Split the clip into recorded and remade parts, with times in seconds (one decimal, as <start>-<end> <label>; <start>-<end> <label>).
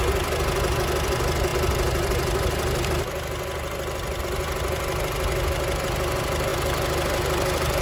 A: 0.0-7.8 recorded